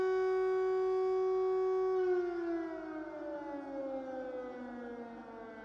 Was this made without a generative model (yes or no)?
yes